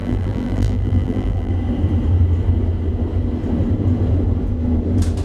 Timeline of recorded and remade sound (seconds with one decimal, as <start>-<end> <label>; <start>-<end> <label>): 0.0-1.5 remade; 1.5-5.2 recorded